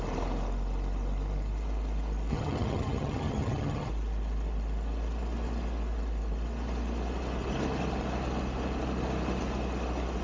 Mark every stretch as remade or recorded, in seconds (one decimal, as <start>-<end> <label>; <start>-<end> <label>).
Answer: 0.0-2.3 recorded; 2.3-3.9 remade; 3.9-10.2 recorded